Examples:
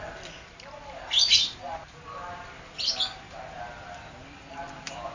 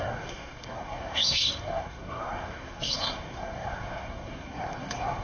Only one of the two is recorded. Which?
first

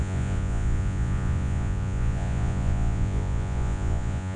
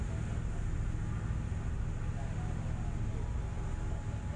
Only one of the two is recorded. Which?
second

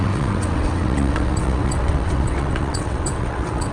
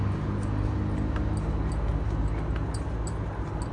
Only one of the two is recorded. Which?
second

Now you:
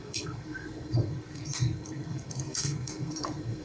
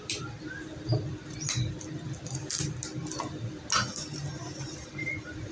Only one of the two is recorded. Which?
second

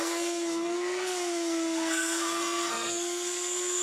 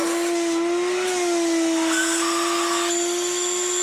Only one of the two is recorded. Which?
second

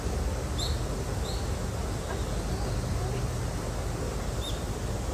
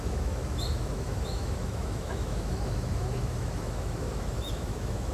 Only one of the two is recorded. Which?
first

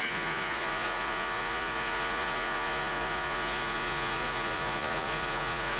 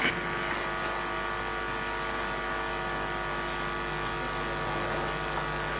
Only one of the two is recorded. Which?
second